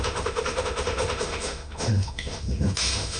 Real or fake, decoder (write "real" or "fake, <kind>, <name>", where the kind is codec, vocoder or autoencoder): fake, autoencoder, DAC-VAE